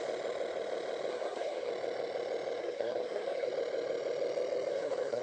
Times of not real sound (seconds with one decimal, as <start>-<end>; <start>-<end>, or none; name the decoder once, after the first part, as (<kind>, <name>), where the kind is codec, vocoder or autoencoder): 1.1-1.7 (codec, SNAC); 2.6-3.5; 4.7-5.2